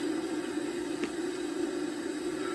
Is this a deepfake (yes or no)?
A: no